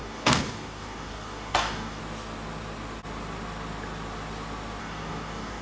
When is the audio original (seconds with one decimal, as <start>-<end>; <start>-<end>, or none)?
2.0-4.8